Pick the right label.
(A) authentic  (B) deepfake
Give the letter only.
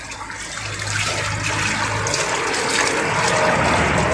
A